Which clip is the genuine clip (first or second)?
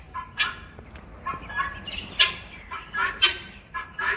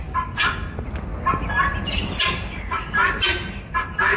second